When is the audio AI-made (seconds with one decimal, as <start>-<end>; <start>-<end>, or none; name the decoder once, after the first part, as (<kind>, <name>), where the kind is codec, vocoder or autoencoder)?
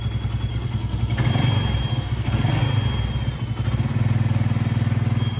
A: 0.5-1.3 (codec, SNAC); 1.9-2.6